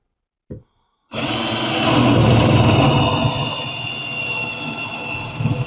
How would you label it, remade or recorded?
recorded